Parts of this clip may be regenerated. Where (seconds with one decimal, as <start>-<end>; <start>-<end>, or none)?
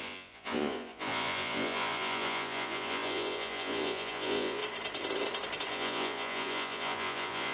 0.0-4.6; 5.7-7.5